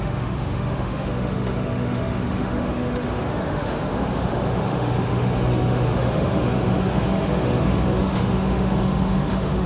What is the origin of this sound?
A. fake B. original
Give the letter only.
A